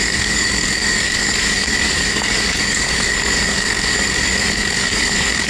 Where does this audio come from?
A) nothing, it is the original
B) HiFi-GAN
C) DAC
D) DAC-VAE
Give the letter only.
C